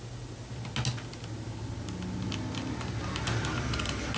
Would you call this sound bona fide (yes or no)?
yes